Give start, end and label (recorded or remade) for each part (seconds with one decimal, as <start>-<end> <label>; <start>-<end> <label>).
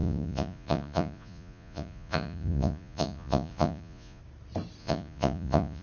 0.0-4.2 remade; 4.2-4.8 recorded; 4.8-5.8 remade